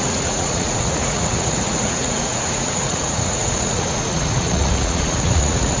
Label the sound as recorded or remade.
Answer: remade